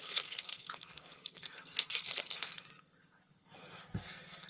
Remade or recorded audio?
remade